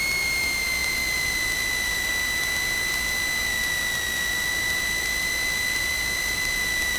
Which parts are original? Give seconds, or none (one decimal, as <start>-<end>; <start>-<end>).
0.0-0.8; 2.1-3.4